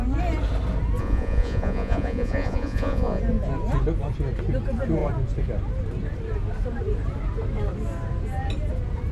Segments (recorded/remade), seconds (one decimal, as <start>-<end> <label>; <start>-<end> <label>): 0.0-1.0 recorded; 1.0-3.2 remade; 3.2-9.1 recorded